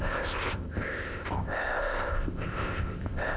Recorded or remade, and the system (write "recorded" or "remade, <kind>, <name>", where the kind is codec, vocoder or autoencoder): remade, codec, ZipCodec